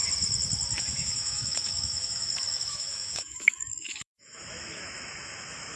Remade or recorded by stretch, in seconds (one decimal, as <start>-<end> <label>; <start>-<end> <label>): 0.0-0.8 recorded; 0.8-5.8 remade